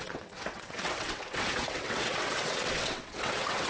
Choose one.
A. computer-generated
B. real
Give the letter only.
A